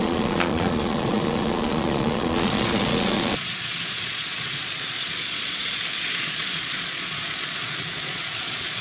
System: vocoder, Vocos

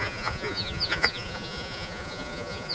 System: vocoder, Vocos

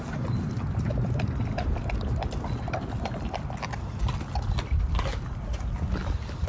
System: none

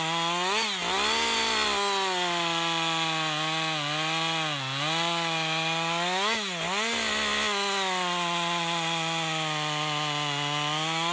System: none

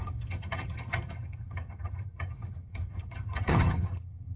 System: vocoder, HiFi-GAN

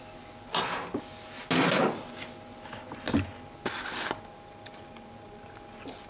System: none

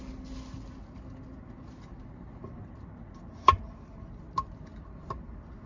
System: none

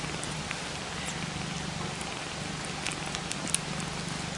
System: none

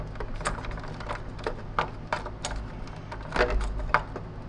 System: none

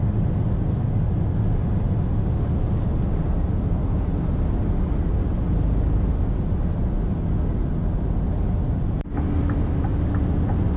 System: none